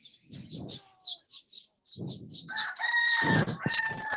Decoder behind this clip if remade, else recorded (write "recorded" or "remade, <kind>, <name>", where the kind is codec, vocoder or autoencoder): recorded